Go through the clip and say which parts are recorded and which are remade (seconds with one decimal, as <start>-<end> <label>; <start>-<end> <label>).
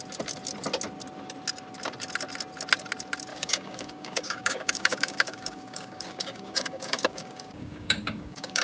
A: 0.0-3.3 recorded; 3.3-8.6 remade